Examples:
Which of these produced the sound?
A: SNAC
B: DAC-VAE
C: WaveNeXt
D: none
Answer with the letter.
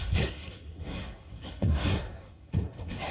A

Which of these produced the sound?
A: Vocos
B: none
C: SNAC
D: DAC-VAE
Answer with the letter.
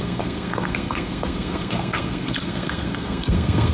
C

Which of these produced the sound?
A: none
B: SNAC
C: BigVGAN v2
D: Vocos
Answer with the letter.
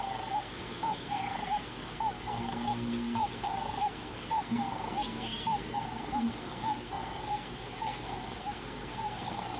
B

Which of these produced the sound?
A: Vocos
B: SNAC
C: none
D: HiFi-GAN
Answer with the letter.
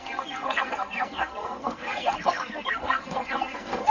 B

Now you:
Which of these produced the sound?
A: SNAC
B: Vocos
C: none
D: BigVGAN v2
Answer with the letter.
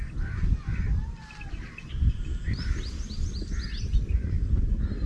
C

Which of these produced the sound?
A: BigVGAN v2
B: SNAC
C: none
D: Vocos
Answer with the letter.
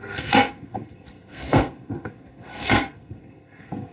B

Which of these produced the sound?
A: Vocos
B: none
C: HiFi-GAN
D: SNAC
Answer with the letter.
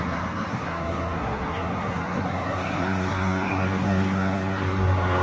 D